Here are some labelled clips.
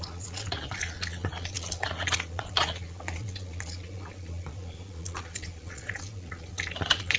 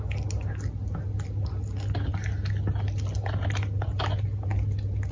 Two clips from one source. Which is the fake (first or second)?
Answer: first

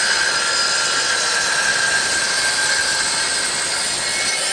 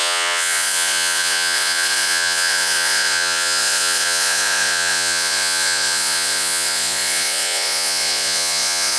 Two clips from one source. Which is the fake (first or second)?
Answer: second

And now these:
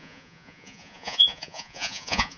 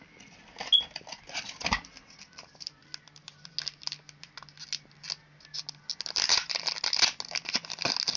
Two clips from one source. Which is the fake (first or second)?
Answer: first